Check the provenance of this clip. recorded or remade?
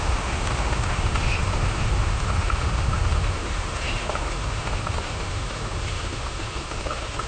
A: remade